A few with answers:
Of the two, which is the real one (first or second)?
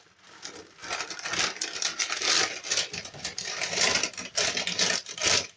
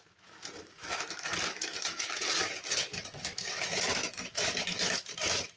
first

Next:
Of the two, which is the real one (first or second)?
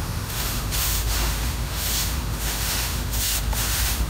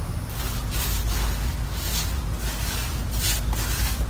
second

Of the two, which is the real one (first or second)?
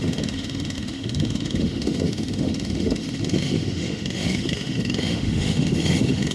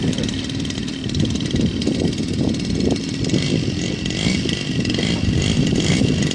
second